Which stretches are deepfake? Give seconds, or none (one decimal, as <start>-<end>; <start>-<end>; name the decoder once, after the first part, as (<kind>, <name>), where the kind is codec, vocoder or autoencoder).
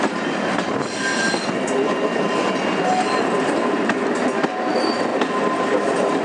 none